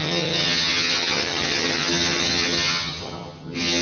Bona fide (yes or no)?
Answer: no